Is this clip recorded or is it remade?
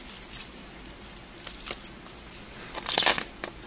recorded